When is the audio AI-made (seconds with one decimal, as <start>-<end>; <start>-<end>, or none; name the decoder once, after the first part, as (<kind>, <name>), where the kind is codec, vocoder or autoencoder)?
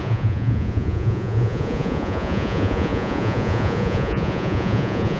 0.0-5.2 (vocoder, Vocos)